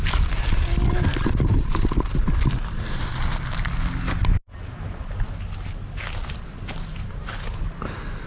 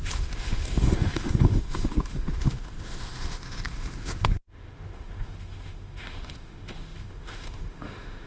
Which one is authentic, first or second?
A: first